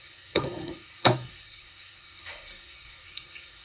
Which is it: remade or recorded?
remade